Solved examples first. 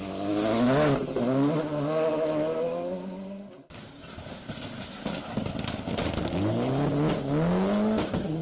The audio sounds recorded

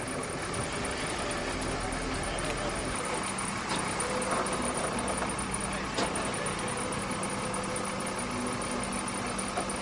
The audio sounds recorded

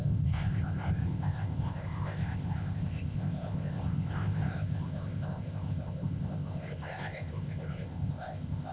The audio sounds remade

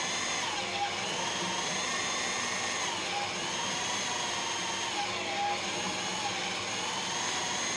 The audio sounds recorded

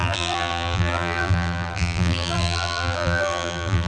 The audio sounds remade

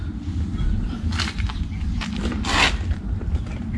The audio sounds recorded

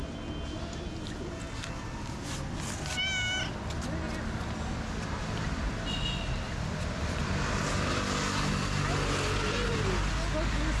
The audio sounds recorded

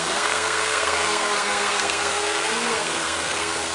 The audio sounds remade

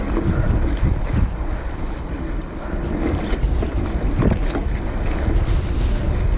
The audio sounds recorded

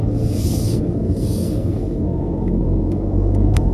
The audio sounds remade